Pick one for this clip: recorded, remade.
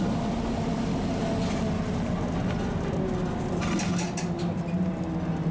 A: recorded